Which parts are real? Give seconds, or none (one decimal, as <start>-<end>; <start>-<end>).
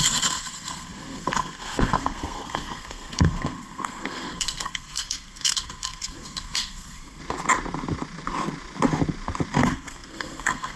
7.2-9.6